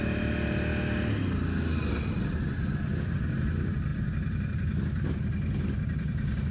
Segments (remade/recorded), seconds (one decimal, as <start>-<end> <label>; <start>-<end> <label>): 0.0-6.5 recorded